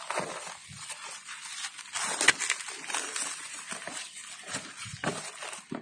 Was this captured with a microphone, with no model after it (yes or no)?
yes